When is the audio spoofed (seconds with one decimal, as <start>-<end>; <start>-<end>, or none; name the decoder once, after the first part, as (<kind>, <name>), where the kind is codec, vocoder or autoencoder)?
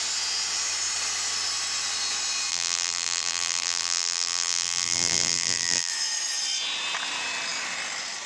2.5-5.9 (vocoder, BigVGAN v2)